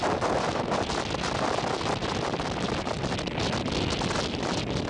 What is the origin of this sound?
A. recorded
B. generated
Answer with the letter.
A